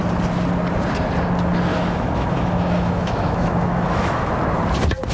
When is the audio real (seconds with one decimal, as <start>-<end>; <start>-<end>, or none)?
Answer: 0.0-1.7; 4.3-5.1